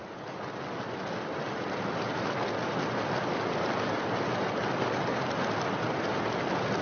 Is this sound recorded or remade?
recorded